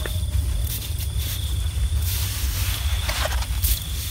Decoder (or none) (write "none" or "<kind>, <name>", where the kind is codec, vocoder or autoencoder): none